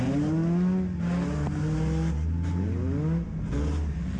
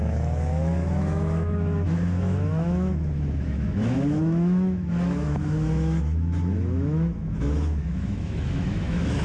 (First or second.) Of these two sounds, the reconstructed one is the second